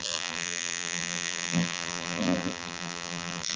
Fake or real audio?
fake